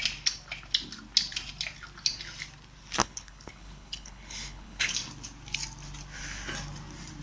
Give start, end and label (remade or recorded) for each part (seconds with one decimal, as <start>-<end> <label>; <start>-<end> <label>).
0.0-3.0 recorded; 3.0-4.9 remade; 4.9-7.2 recorded